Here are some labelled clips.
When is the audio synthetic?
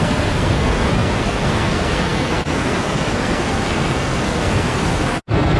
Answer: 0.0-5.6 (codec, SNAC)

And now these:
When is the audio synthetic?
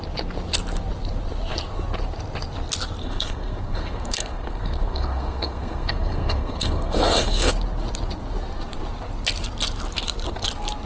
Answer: 3.0-7.5 (codec, SNAC)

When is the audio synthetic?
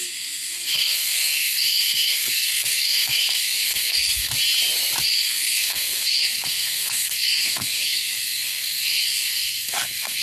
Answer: 0.0-4.3 (codec, SNAC); 5.1-10.2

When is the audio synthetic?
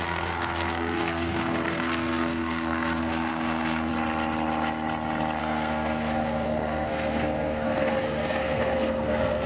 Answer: 0.0-3.9 (codec, SNAC); 5.4-9.5